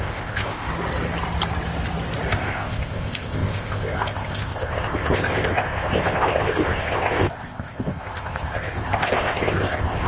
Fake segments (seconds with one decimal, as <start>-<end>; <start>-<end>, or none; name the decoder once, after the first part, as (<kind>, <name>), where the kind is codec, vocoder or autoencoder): 0.0-0.7 (codec, ZipCodec); 2.3-10.1